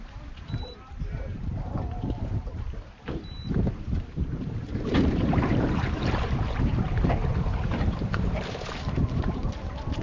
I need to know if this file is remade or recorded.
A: remade